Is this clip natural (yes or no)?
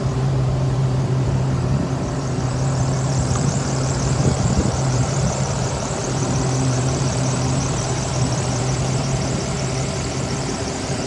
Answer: no